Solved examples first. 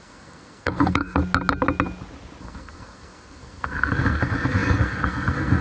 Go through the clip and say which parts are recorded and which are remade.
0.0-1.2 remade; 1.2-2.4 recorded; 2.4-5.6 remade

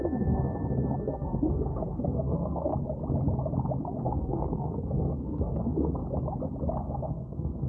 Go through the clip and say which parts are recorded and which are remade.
0.0-2.7 remade; 2.7-4.0 recorded; 4.0-6.0 remade; 6.0-6.8 recorded; 6.8-7.7 remade

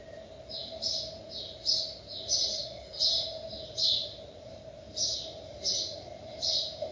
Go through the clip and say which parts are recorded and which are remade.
0.0-2.5 recorded; 2.5-3.0 remade; 3.0-6.9 recorded